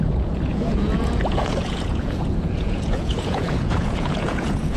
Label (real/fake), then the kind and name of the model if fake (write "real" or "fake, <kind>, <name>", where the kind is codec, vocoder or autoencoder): fake, vocoder, Vocos